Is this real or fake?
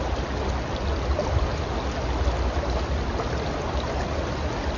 real